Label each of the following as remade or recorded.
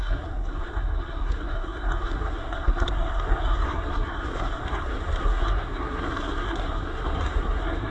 remade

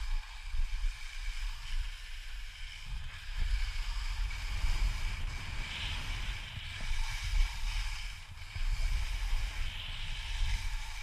recorded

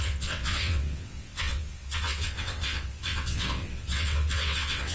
remade